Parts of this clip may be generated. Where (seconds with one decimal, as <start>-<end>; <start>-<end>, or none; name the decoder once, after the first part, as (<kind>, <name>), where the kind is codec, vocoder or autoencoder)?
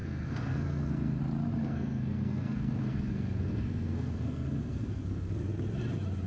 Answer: 0.0-1.2 (codec, SNAC); 1.6-5.3